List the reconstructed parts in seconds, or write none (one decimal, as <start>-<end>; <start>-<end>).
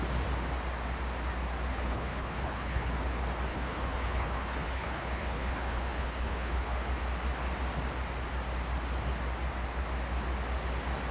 1.7-2.9; 3.5-6.9